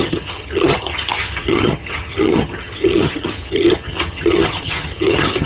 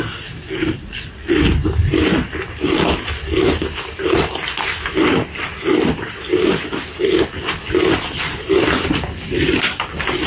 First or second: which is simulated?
first